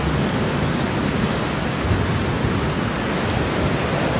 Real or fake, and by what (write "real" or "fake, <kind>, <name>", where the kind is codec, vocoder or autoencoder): real